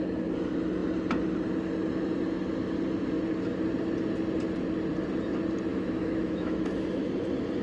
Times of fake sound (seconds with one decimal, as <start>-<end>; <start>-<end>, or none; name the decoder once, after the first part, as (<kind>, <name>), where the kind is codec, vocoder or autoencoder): 5.7-7.1 (autoencoder, DAC-VAE)